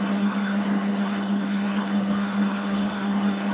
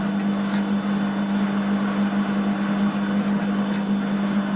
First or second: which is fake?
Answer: first